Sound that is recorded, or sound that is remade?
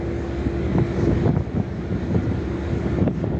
remade